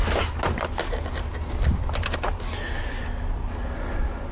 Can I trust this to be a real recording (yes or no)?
yes